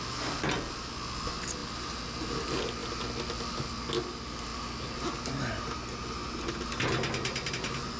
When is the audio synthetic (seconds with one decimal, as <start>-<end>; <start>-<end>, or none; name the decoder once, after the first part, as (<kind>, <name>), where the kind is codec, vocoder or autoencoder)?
none